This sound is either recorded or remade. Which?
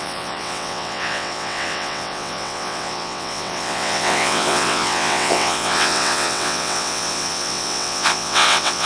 remade